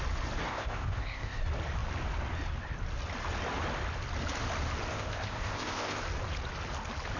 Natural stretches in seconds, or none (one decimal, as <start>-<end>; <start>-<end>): 0.0-0.5; 1.4-4.9; 6.0-7.2